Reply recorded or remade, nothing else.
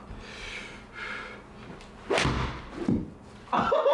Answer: recorded